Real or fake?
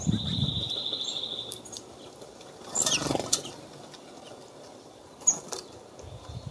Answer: real